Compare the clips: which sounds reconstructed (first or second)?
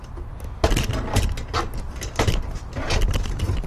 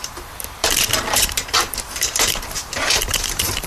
second